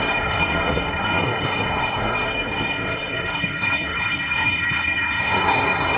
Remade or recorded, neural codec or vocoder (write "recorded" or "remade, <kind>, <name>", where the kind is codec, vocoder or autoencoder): remade, codec, SNAC